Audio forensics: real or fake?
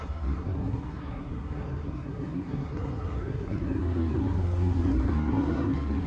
fake